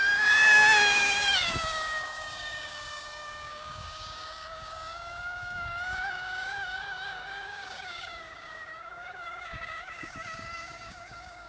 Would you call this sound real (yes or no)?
no